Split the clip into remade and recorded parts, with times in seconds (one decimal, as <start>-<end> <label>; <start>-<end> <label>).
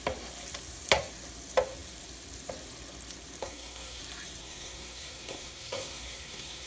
0.0-3.4 recorded; 3.4-4.0 remade; 4.0-4.4 recorded; 4.4-6.7 remade